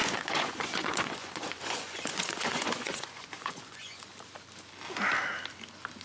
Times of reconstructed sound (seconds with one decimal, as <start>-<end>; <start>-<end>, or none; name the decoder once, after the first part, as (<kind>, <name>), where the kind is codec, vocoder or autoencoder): 0.0-4.1 (vocoder, Vocos)